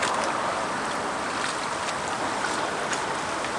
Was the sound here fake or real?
real